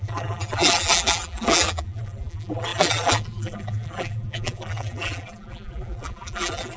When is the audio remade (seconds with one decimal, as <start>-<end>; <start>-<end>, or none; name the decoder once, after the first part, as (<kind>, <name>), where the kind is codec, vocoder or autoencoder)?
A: 0.0-6.8 (vocoder, BigVGAN v2)